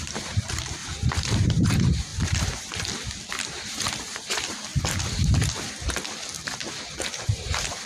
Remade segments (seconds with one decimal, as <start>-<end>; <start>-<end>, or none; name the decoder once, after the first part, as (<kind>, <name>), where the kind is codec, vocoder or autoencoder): 0.0-2.1 (vocoder, BigVGAN v2); 3.4-4.7; 6.8-7.9